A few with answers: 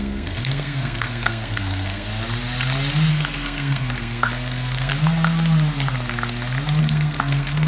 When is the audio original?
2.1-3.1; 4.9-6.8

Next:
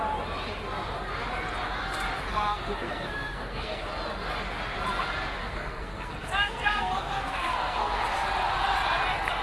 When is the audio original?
0.0-2.3; 3.8-5.4; 8.0-9.4

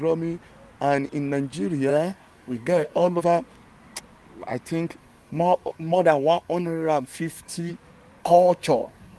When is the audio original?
0.0-1.9; 3.2-5.0; 7.7-8.2